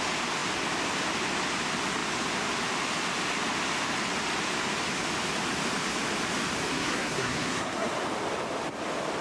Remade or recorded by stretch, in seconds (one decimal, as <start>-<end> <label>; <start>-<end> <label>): 0.0-6.7 recorded; 6.7-7.9 remade; 7.9-9.2 recorded